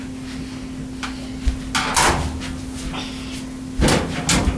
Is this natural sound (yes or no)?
yes